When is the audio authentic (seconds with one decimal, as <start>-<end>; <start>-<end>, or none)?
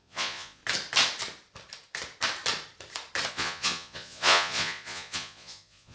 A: 0.6-3.3